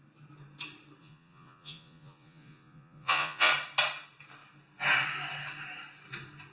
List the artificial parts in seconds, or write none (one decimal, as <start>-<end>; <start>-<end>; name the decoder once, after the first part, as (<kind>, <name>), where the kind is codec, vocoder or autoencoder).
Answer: 1.0-3.5 (vocoder, Vocos)